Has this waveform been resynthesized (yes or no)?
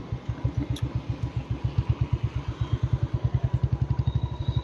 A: no